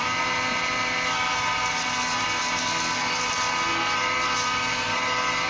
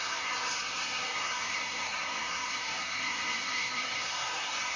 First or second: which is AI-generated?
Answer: second